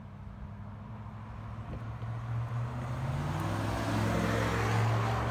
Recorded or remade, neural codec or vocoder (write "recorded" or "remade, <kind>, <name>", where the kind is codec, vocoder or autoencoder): recorded